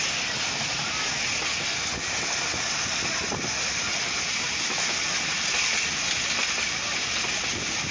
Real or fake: real